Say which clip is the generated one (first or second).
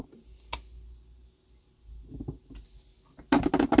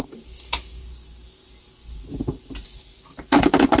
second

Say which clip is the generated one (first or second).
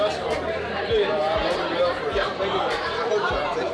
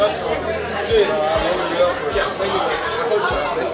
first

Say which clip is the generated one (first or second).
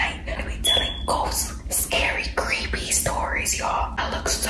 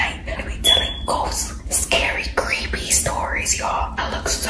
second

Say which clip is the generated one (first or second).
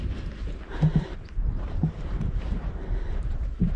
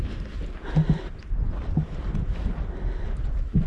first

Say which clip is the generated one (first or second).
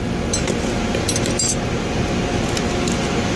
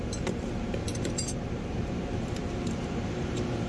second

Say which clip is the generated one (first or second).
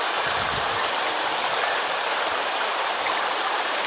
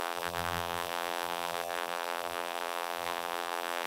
second